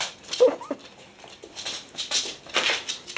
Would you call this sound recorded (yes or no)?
yes